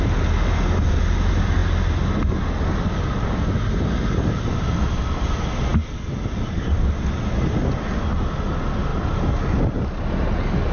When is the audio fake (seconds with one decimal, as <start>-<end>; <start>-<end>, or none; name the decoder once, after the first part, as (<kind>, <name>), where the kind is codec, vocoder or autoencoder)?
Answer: none

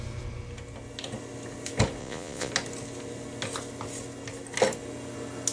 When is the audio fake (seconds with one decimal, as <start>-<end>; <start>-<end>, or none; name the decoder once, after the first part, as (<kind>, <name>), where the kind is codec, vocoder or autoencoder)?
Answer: 2.0-2.5 (vocoder, Vocos)

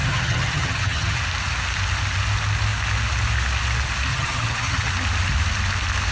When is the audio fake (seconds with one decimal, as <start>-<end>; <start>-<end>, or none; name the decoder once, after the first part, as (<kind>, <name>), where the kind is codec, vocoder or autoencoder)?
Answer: 0.0-1.2 (vocoder, HiFi-GAN); 4.1-4.9

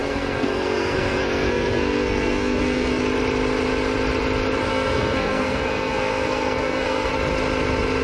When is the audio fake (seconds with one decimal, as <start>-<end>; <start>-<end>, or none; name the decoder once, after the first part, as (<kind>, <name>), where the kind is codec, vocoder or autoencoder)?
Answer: 0.0-3.0 (codec, SNAC); 4.7-7.1

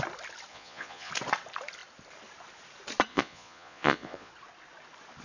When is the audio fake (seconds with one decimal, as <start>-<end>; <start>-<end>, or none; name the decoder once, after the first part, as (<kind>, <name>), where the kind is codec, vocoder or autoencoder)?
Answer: 0.5-1.1 (vocoder, Vocos); 3.1-4.3

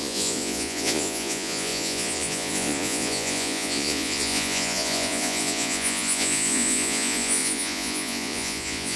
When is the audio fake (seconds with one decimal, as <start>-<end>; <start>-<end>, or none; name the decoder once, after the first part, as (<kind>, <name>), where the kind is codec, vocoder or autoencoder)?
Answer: 0.0-9.0 (vocoder, Vocos)

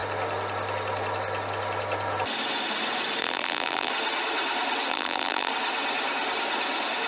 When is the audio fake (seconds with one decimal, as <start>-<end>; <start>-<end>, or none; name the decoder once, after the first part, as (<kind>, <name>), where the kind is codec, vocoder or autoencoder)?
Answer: 3.2-3.9 (vocoder, BigVGAN v2); 4.9-5.5